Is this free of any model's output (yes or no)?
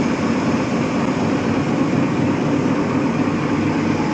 yes